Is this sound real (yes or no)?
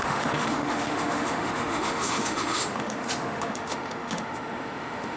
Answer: no